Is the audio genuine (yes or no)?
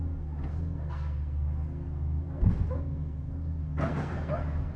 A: no